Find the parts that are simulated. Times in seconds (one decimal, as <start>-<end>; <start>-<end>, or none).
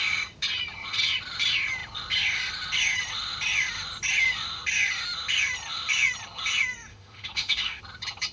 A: 6.9-7.8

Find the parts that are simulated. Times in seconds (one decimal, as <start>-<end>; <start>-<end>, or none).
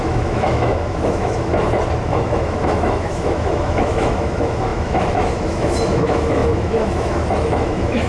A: 0.0-1.5; 2.1-8.1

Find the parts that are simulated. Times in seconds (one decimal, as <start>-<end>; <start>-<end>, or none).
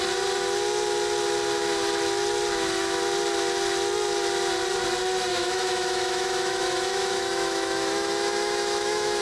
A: 5.3-9.2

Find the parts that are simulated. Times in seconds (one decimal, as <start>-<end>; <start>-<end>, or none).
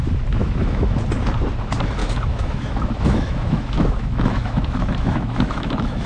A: 0.4-1.0; 2.0-6.1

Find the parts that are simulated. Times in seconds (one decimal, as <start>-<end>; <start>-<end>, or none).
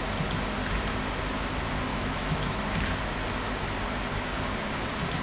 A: 1.9-2.6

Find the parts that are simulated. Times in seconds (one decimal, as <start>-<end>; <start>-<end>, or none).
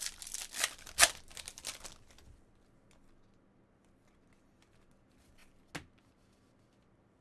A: none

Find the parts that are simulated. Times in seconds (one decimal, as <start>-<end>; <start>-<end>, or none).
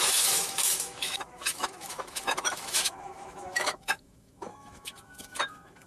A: 0.0-5.9